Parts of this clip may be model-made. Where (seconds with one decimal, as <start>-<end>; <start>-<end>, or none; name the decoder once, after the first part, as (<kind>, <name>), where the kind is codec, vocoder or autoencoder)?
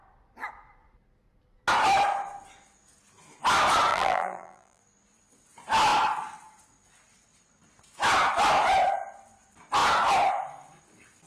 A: 3.9-4.8 (vocoder, BigVGAN v2)